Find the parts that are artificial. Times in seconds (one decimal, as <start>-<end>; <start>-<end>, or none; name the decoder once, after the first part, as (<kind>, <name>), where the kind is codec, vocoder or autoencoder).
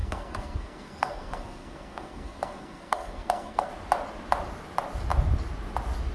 0.0-3.7 (codec, SNAC)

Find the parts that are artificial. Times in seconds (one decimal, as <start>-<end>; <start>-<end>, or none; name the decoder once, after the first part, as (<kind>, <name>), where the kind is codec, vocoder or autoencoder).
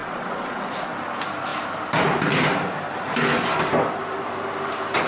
0.0-0.9 (vocoder, Vocos)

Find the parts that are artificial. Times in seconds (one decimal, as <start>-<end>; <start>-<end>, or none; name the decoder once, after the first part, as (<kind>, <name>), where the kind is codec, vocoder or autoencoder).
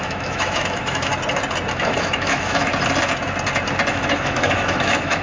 0.0-1.1 (autoencoder, DAC-VAE); 1.7-2.7; 3.9-5.2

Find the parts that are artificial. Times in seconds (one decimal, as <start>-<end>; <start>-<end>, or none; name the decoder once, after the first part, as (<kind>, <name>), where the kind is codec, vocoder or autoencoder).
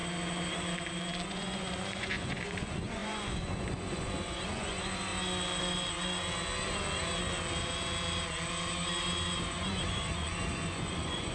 1.3-5.1 (vocoder, Vocos); 9.4-11.3